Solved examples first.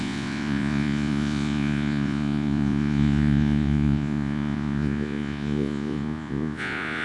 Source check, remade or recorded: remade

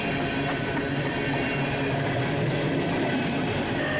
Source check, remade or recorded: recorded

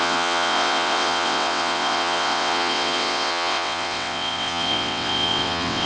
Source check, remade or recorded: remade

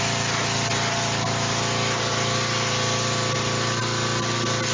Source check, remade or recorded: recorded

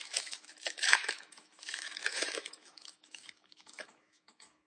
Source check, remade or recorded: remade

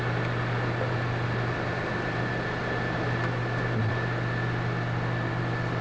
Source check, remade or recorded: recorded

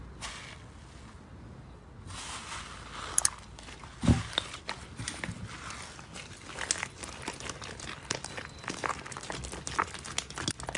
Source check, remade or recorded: recorded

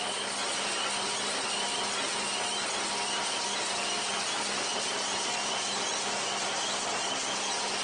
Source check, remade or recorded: recorded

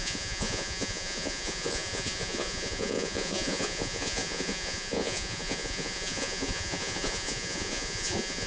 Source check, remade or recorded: remade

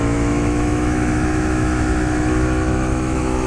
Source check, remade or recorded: remade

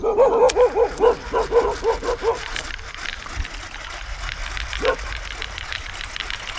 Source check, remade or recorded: recorded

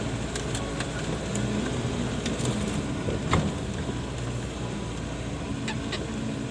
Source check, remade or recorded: recorded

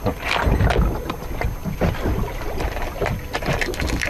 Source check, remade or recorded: recorded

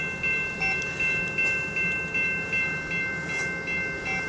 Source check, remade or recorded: recorded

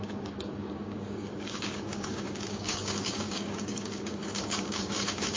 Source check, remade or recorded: remade